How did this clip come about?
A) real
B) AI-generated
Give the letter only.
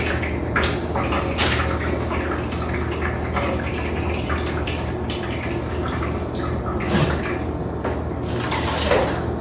A